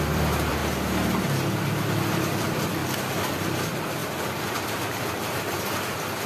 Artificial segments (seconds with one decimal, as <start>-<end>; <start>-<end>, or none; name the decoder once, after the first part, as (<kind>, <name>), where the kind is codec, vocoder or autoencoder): 0.0-0.6 (vocoder, BigVGAN v2); 2.1-2.8; 3.3-6.3